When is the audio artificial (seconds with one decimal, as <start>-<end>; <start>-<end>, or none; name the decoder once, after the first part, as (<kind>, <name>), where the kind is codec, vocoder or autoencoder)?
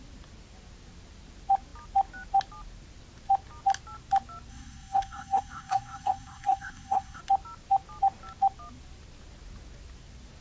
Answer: 4.5-7.2 (codec, SNAC)